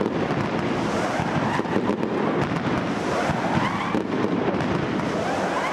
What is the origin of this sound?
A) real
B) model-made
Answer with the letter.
A